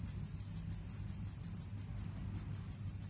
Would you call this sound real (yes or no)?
yes